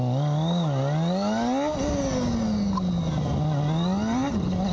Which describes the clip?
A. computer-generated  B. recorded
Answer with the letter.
B